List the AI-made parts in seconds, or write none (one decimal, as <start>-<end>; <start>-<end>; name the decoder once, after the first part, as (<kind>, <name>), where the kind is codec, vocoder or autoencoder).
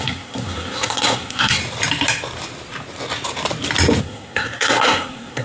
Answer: 0.0-1.6 (codec, SNAC); 4.0-5.4